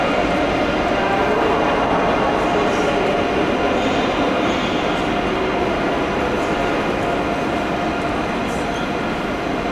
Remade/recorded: recorded